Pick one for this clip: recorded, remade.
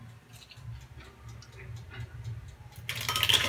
recorded